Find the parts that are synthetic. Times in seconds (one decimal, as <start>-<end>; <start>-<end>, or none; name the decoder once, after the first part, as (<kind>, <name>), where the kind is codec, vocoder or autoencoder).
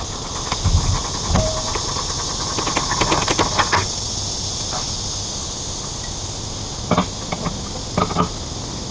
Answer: none